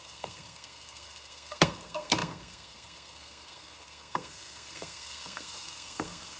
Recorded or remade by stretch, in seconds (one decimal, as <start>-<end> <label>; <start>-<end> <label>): 0.0-6.4 remade